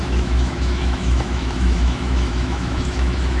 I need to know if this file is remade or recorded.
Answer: remade